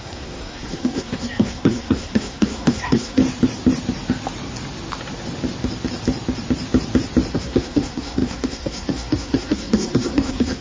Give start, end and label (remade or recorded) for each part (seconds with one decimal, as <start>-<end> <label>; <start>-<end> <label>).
0.0-3.2 remade; 3.2-7.3 recorded; 7.3-10.6 remade